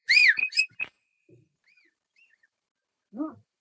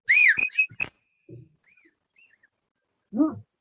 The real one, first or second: second